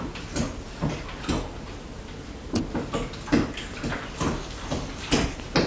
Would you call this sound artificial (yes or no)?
no